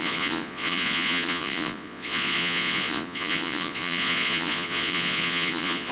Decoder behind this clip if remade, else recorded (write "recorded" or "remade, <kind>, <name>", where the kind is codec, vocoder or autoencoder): remade, vocoder, Vocos